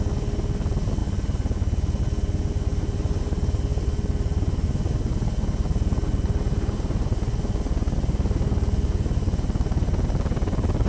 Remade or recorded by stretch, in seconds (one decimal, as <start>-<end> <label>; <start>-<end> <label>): 0.0-3.7 recorded; 3.7-4.9 remade; 4.9-10.9 recorded

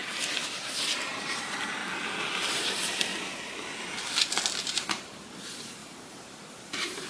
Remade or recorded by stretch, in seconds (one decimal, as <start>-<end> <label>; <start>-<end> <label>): 0.0-1.8 remade; 1.8-2.5 recorded; 2.5-3.1 remade; 3.1-4.6 recorded; 4.6-7.1 remade